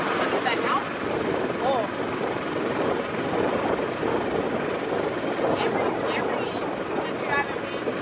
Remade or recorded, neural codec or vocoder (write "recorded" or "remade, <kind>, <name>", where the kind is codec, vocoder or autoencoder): recorded